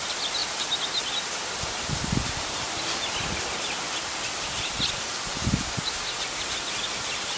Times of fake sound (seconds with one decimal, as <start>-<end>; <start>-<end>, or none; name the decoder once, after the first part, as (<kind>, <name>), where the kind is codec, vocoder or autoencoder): none